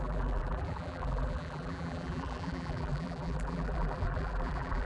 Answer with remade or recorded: remade